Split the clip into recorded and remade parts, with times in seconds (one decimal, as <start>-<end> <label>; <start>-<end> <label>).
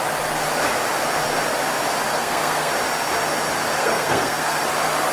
0.0-2.1 recorded; 2.1-2.7 remade; 2.7-3.7 recorded; 3.7-4.6 remade; 4.6-5.1 recorded